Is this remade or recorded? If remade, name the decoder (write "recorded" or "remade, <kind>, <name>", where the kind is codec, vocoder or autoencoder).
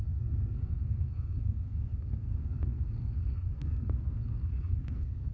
remade, codec, SNAC